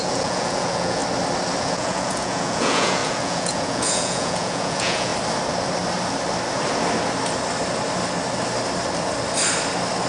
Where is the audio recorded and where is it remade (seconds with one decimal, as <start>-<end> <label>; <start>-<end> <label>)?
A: 0.0-1.0 remade; 1.0-1.6 recorded; 1.6-5.1 remade; 5.1-10.1 recorded